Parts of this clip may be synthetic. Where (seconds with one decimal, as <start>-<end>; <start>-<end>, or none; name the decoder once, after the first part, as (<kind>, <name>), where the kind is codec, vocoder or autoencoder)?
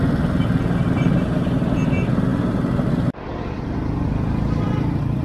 3.3-5.2 (vocoder, BigVGAN v2)